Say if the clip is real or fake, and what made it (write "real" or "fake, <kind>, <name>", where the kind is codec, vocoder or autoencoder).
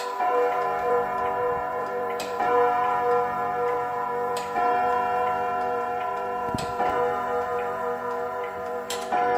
fake, vocoder, BigVGAN v2